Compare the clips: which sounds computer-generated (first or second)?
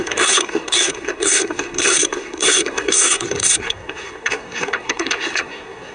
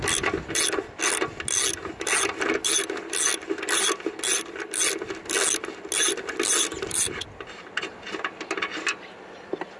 first